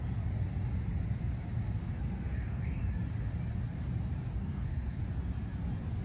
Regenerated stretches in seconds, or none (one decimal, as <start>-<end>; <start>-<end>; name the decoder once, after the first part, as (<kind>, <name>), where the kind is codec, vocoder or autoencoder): 1.8-2.9 (codec, SNAC); 4.4-5.0